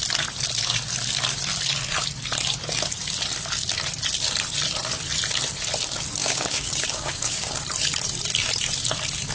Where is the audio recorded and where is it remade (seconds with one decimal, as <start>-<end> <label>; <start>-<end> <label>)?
0.0-6.2 recorded; 6.2-7.6 remade; 7.6-9.3 recorded